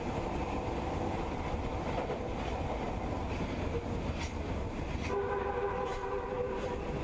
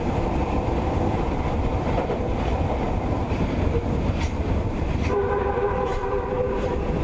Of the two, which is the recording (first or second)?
first